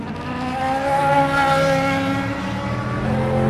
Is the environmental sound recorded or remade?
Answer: recorded